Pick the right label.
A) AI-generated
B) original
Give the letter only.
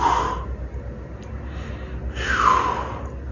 B